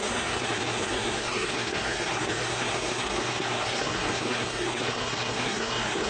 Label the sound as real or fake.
fake